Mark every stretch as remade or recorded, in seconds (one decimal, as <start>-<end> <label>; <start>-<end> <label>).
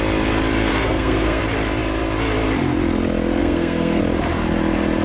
0.0-0.7 recorded; 0.7-1.4 remade; 1.4-3.4 recorded; 3.4-4.0 remade; 4.0-5.0 recorded